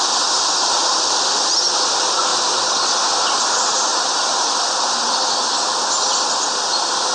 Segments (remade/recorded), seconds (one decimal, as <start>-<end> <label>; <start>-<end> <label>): 0.0-7.1 recorded